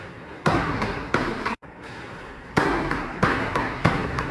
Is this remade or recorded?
remade